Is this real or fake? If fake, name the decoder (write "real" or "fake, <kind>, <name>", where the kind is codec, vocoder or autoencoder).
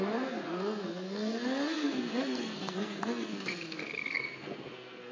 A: fake, codec, SNAC